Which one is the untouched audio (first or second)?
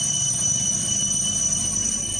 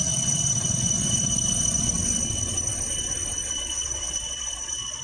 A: first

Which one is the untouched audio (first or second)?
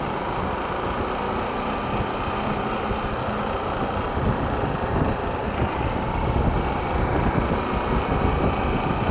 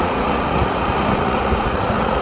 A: first